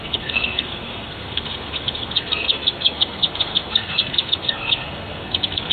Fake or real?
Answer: fake